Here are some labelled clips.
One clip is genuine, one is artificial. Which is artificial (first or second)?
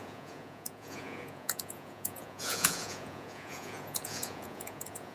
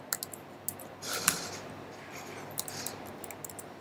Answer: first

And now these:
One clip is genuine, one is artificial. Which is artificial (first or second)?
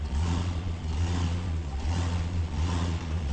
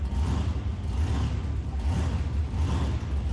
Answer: first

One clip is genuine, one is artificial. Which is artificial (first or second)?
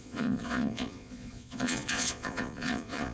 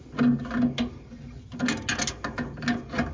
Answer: first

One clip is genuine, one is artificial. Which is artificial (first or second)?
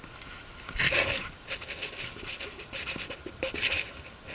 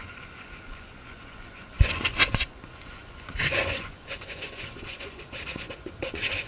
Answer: second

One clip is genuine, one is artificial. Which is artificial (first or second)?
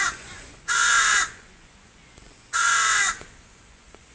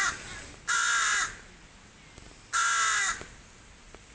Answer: first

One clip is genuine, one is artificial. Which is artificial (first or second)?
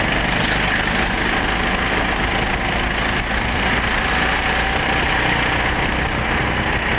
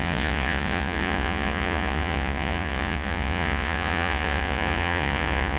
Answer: second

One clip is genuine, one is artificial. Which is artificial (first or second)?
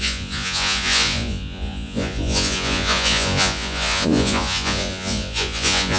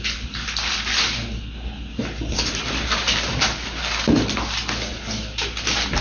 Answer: first